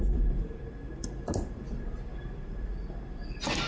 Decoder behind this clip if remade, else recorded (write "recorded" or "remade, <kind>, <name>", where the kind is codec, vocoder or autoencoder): recorded